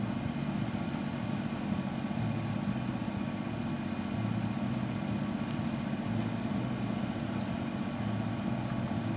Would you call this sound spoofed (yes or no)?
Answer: no